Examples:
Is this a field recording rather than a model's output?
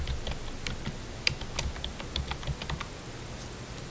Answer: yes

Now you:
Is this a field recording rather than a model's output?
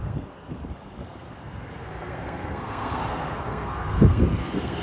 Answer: no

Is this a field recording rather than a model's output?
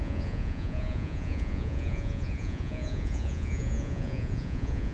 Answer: no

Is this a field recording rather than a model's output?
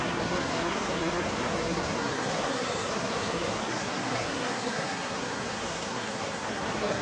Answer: no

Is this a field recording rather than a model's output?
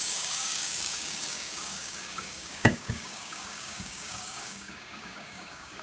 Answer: no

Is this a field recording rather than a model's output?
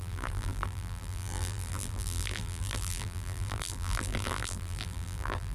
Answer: no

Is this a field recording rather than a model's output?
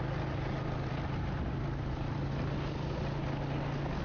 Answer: yes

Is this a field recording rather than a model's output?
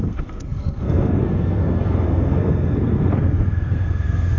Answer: no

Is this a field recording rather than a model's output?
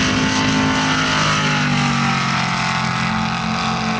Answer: yes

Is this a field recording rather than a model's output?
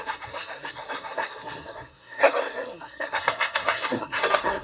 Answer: no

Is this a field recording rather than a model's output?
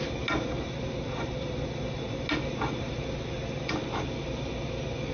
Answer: yes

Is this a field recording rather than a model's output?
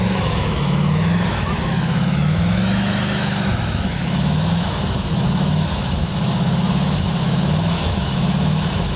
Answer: no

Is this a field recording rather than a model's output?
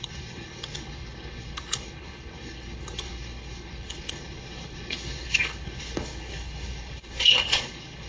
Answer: no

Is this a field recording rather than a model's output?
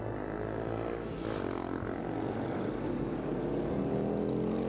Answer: yes